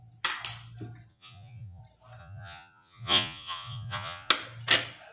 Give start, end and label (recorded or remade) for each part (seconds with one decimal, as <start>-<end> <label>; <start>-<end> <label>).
0.0-1.1 recorded; 1.1-1.8 remade; 1.8-2.2 recorded; 2.2-4.3 remade; 4.3-5.1 recorded